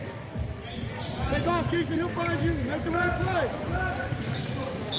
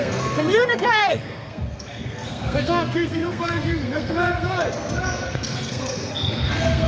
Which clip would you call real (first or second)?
first